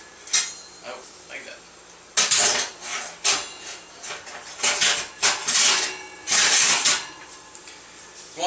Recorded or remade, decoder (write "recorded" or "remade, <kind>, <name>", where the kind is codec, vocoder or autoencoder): recorded